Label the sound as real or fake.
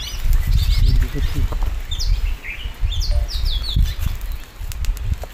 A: real